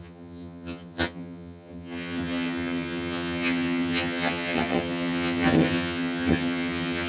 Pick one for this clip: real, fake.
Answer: fake